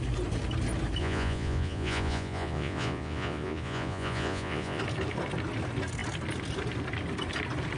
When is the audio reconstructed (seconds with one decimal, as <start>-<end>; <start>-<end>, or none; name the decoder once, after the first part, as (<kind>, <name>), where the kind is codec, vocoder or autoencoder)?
1.0-4.8 (vocoder, Vocos)